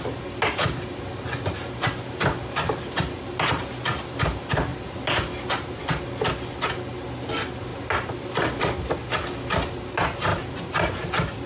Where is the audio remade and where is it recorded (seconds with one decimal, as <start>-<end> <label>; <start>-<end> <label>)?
0.0-4.7 recorded; 4.7-5.8 remade; 5.8-7.7 recorded; 7.7-8.6 remade; 8.6-10.3 recorded; 10.3-11.5 remade